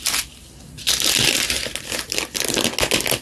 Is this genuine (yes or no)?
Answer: yes